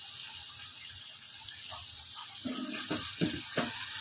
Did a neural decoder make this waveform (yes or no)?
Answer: no